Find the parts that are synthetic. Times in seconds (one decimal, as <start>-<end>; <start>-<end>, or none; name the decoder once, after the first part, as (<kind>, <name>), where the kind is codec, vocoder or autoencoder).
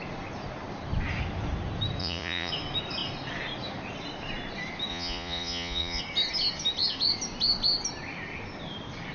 2.0-2.5 (vocoder, Vocos); 4.9-6.0